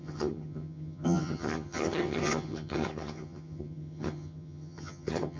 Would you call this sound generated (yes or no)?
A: yes